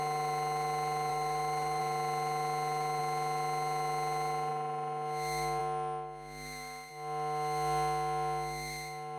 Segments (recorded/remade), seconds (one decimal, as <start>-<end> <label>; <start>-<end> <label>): 0.0-1.1 recorded; 1.1-1.8 remade; 1.8-9.2 recorded